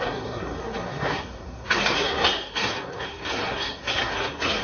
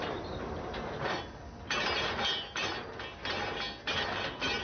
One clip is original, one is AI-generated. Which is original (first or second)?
second